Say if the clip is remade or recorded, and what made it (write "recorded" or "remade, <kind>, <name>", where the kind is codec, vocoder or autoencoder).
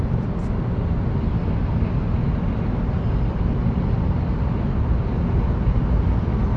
recorded